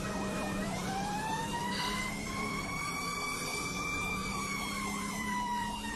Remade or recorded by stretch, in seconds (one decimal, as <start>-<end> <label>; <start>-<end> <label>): 0.0-6.0 remade